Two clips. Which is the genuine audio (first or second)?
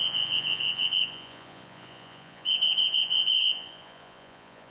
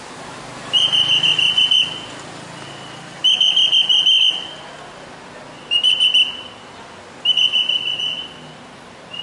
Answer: second